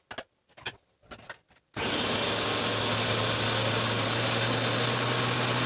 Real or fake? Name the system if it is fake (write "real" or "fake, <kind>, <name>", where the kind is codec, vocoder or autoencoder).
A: real